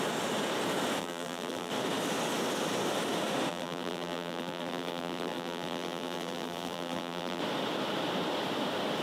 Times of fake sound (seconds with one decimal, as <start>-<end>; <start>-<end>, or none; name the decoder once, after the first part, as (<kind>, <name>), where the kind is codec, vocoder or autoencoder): 1.0-1.7 (vocoder, BigVGAN v2); 3.5-7.4